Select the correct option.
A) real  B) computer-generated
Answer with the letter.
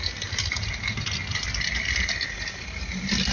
A